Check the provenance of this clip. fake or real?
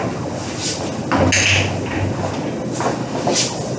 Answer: real